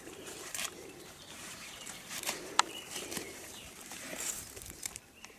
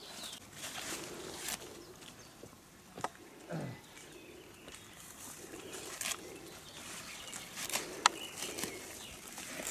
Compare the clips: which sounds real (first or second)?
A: second